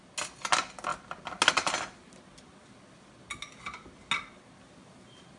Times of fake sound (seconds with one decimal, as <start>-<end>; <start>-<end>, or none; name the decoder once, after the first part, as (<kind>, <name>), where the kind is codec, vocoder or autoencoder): none

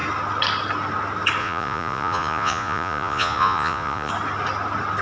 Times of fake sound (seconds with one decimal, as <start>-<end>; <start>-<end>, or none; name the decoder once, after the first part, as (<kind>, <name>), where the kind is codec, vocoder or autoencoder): 1.4-4.1 (vocoder, Vocos)

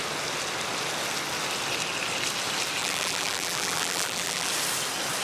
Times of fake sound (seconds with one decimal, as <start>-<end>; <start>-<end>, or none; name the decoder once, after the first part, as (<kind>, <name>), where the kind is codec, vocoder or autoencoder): 2.8-4.5 (vocoder, BigVGAN v2)

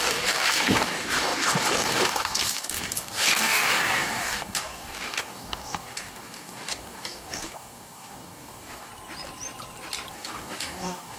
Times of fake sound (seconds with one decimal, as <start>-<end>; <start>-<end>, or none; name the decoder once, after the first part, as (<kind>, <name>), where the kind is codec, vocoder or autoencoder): 0.0-8.9 (codec, DAC); 10.1-11.2

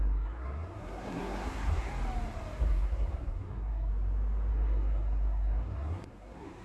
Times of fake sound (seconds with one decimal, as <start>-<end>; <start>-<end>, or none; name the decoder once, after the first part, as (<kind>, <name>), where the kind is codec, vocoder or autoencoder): 0.0-1.9 (codec, SNAC); 2.6-3.9; 4.5-6.6

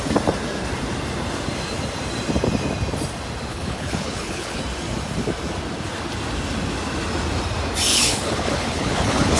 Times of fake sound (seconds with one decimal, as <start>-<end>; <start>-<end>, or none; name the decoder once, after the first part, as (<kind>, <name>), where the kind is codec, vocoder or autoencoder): 3.5-4.6 (codec, HILCodec); 7.9-9.4

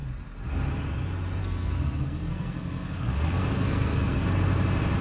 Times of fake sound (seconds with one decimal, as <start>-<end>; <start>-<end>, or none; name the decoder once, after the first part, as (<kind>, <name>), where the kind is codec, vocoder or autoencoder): 1.4-4.4 (codec, SNAC)